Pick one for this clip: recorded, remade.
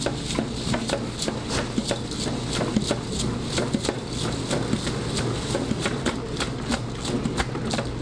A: recorded